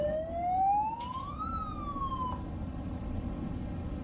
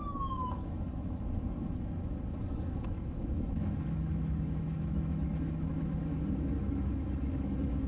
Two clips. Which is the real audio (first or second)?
first